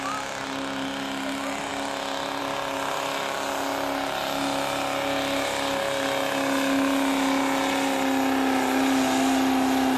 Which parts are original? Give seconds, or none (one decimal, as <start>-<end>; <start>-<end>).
0.0-10.0